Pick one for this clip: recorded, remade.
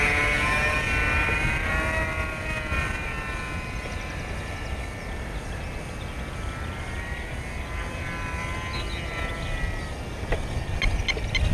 recorded